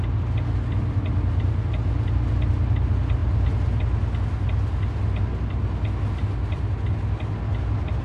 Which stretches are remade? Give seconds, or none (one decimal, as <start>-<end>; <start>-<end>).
none